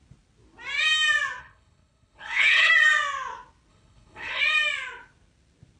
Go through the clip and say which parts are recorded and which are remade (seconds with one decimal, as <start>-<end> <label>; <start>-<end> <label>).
0.0-1.4 recorded; 1.4-2.7 remade; 2.7-3.7 recorded; 3.7-4.4 remade; 4.4-5.8 recorded